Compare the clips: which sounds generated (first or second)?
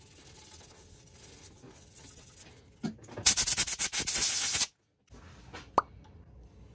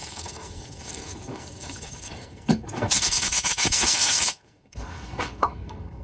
second